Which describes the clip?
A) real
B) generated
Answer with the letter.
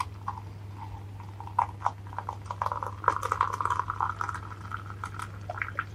A